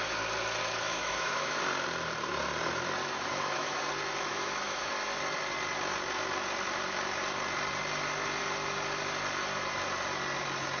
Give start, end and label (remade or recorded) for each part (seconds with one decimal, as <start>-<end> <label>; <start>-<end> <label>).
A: 0.0-0.6 recorded; 0.6-1.6 remade; 1.6-3.0 recorded; 3.0-3.8 remade; 3.8-4.3 recorded; 4.3-4.9 remade; 4.9-10.8 recorded